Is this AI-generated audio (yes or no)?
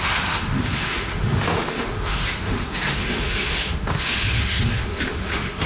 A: yes